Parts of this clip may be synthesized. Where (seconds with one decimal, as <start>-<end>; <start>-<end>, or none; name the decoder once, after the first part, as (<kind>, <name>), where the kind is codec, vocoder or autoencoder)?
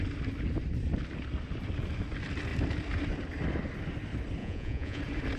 4.4-5.0 (vocoder, Vocos)